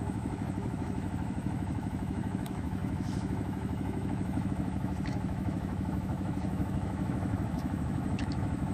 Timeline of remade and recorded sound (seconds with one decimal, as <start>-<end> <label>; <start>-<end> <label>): 0.0-8.7 remade